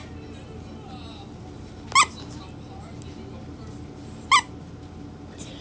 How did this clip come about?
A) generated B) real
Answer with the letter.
B